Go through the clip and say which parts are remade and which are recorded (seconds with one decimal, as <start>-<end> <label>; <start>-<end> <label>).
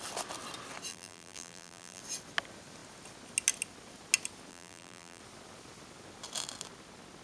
0.0-0.9 recorded; 0.9-2.0 remade; 2.0-4.5 recorded; 4.5-5.2 remade; 5.2-7.2 recorded